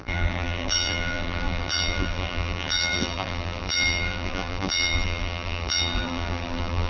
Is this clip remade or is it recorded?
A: remade